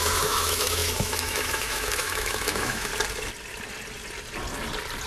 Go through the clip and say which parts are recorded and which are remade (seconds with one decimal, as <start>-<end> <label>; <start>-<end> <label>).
0.0-2.9 remade; 2.9-5.1 recorded